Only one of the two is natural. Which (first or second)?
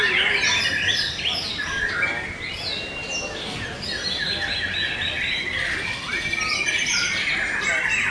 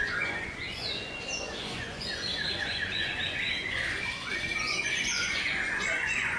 first